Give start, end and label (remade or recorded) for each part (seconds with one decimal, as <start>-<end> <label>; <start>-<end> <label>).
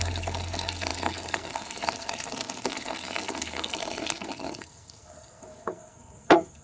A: 0.0-6.6 remade